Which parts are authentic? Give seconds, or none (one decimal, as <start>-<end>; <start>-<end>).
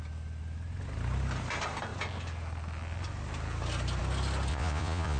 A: 0.0-4.5